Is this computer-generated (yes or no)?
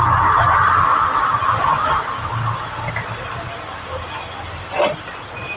no